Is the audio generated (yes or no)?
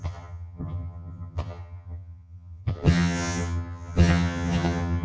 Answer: yes